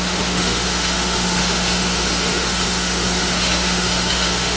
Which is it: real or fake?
fake